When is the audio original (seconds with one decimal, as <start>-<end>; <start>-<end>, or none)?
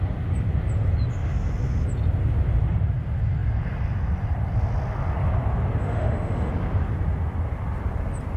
0.0-5.8; 6.5-8.4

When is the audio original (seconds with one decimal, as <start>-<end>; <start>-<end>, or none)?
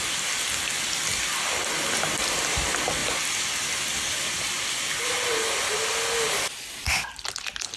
0.0-7.8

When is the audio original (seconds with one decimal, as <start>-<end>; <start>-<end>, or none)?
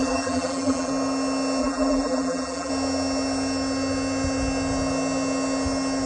0.9-1.6; 2.7-6.1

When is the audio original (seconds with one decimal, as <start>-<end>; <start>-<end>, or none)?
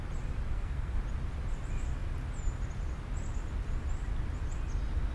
0.0-0.5; 1.0-5.1